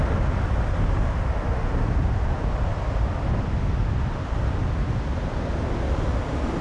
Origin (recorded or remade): recorded